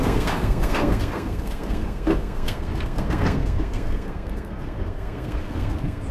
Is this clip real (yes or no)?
no